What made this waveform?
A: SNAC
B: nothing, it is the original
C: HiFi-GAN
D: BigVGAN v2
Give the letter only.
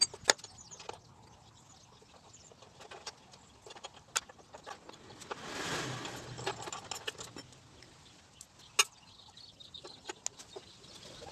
B